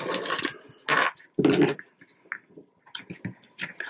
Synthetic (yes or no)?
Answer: no